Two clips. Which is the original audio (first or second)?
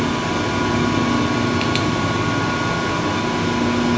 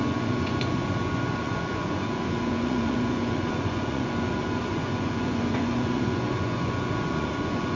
first